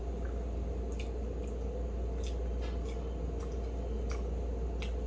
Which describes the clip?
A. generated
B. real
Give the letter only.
B